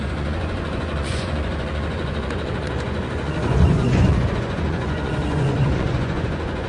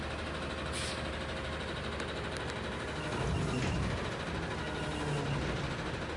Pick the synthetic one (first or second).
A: first